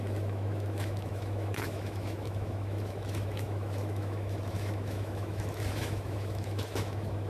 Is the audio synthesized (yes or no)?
yes